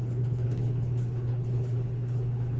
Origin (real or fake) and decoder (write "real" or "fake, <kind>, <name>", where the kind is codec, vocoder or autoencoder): fake, codec, HILCodec